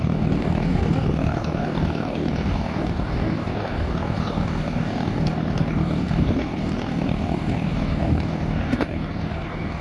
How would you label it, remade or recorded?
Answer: remade